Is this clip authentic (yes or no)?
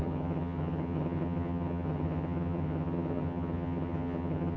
no